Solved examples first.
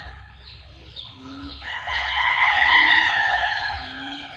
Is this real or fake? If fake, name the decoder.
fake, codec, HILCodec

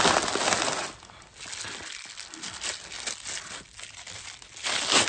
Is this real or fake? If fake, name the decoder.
real